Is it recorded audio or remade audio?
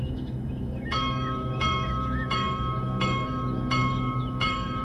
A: remade